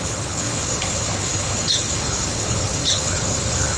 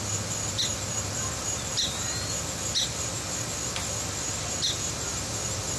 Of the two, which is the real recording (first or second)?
second